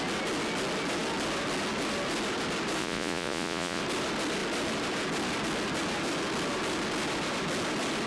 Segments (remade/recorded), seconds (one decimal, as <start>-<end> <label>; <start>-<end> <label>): 0.0-2.8 recorded; 2.8-3.8 remade; 3.8-8.1 recorded